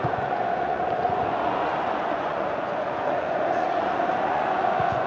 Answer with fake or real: fake